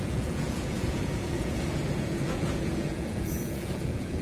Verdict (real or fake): fake